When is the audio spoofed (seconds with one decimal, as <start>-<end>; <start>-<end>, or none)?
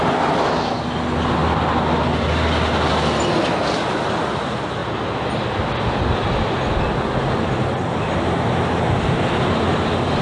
none